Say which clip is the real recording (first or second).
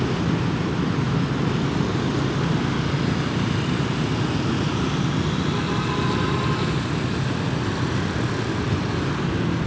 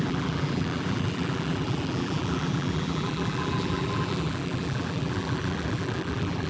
first